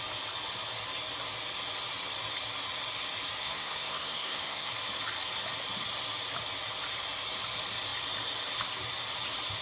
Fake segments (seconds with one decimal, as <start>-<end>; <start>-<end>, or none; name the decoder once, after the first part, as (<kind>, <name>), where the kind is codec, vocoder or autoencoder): 3.4-4.7 (codec, SNAC)